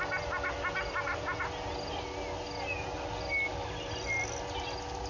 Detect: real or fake real